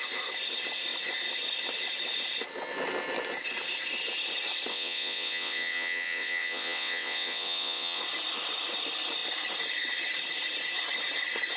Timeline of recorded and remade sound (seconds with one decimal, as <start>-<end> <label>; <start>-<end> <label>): 0.0-4.7 recorded; 4.7-8.0 remade; 8.0-11.6 recorded